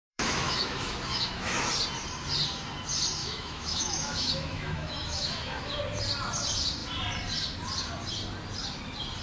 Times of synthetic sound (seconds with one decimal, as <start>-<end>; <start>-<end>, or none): 0.0-1.7; 3.2-5.8